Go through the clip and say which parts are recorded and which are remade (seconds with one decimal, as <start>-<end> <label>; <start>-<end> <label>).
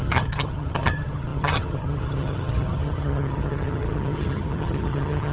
0.0-5.3 remade